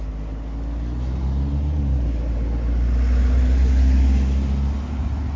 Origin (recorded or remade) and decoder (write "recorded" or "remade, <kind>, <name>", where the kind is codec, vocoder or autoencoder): recorded